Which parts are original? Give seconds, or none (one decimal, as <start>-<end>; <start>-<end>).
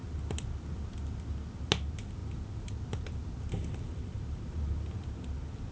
0.0-5.7